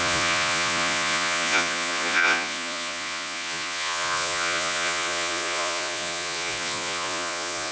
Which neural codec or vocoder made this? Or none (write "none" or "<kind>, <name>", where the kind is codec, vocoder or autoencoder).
vocoder, Vocos